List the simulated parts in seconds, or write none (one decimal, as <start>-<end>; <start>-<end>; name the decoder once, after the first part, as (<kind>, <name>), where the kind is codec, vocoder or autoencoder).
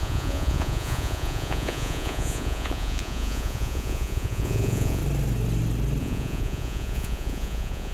0.0-5.0 (vocoder, Vocos); 6.0-7.9